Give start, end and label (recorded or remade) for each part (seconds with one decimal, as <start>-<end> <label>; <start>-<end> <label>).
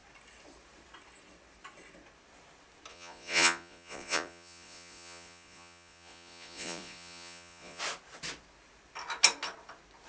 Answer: 0.0-2.9 recorded; 2.9-7.8 remade; 7.8-10.1 recorded